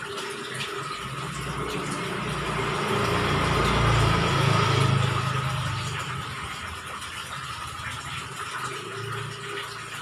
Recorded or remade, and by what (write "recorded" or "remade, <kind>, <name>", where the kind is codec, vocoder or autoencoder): recorded